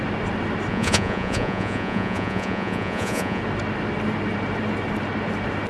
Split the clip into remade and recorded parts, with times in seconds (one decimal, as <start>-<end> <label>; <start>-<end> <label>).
0.0-0.7 recorded; 0.7-3.4 remade; 3.4-5.7 recorded